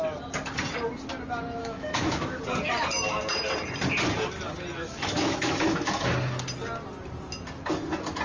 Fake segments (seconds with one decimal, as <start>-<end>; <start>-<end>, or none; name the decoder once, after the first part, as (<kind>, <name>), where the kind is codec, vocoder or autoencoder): 1.6-2.4 (autoencoder, DAC-VAE); 4.8-6.1